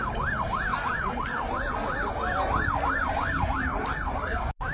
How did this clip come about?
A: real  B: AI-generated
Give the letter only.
B